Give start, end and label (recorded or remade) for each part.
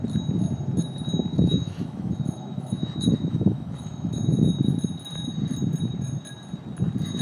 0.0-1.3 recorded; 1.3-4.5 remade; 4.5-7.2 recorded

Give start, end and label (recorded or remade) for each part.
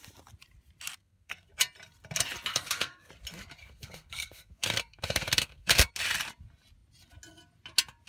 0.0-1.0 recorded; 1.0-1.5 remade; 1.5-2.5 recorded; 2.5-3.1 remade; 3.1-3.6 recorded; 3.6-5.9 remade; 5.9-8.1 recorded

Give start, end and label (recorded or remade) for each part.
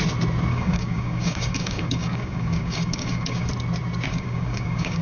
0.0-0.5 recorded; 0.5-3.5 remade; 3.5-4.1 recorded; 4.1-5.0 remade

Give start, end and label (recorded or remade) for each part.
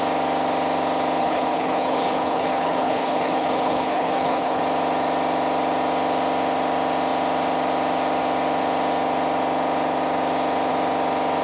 0.0-1.2 recorded; 1.2-4.6 remade; 4.6-11.4 recorded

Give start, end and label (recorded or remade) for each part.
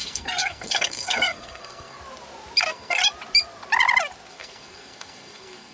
0.0-2.0 remade; 2.0-2.6 recorded; 2.6-3.0 remade; 3.0-4.3 recorded; 4.3-5.7 remade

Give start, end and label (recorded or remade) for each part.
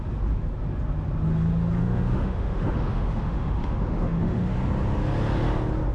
0.0-1.8 recorded; 1.8-4.5 remade; 4.5-5.9 recorded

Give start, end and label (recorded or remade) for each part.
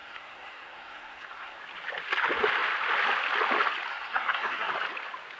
0.0-1.6 remade; 1.6-3.9 recorded; 3.9-4.7 remade; 4.7-5.4 recorded